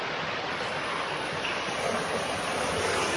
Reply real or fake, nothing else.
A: real